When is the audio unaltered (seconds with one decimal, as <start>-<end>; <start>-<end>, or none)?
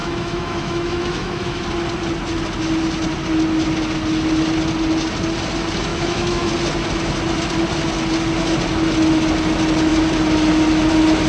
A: 1.6-5.9; 6.5-11.3